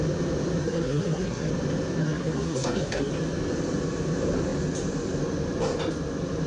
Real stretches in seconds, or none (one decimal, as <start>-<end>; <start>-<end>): 0.0-0.6; 1.5-2.0; 3.1-6.5